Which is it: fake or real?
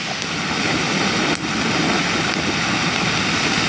real